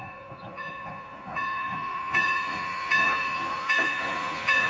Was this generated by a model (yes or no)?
yes